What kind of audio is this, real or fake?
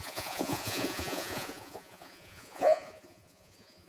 fake